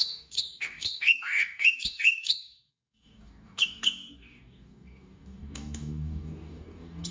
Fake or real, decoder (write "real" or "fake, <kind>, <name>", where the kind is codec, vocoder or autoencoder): fake, codec, DAC